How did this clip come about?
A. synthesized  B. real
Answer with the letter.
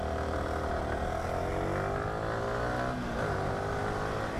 B